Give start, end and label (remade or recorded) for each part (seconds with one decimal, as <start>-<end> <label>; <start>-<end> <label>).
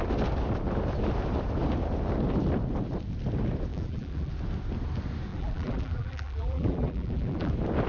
0.0-3.7 recorded; 3.7-4.3 remade; 4.3-5.3 recorded; 5.3-7.5 remade; 7.5-7.9 recorded